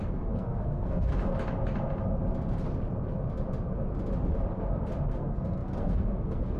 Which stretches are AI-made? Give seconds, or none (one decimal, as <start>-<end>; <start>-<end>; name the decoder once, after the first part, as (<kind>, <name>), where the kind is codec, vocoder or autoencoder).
0.0-1.1 (codec, SNAC); 5.1-6.6